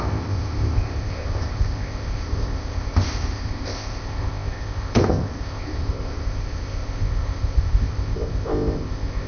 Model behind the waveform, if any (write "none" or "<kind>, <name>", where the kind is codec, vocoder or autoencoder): codec, ZipCodec